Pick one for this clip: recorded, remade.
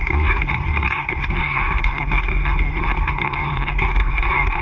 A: remade